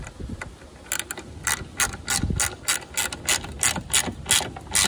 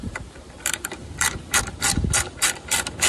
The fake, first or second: second